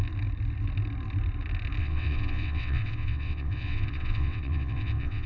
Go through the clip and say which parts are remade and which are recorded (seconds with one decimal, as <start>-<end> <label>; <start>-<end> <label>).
0.0-1.8 recorded; 1.8-5.3 remade